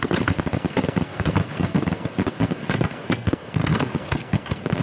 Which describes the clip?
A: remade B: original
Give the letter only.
A